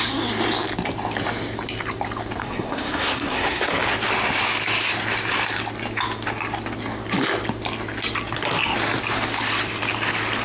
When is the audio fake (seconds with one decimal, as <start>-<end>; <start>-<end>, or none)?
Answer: 2.4-3.7